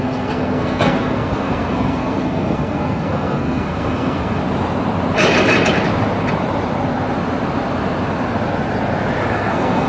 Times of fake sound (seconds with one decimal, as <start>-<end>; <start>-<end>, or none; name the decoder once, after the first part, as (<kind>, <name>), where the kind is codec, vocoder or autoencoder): 0.0-4.4 (codec, SNAC); 9.3-9.9